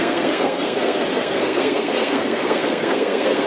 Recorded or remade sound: remade